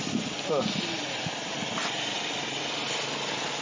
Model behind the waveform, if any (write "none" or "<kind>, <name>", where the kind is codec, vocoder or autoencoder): none